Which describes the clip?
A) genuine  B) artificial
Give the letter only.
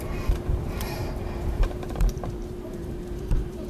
B